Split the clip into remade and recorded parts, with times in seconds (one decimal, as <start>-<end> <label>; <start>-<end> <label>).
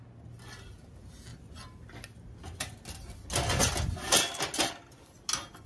0.0-5.7 recorded